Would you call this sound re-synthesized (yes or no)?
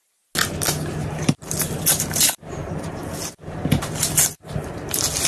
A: no